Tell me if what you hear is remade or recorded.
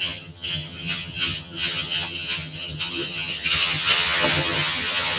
remade